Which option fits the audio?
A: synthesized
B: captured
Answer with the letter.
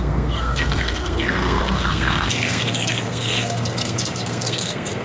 A